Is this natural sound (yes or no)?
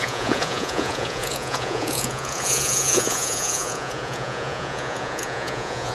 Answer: no